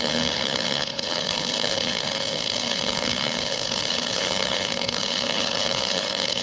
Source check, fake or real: fake